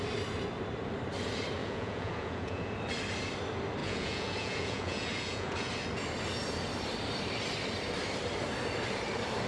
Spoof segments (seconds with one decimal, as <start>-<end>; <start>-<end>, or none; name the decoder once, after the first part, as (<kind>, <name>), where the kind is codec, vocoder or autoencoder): 1.6-2.7 (vocoder, Vocos); 3.8-5.7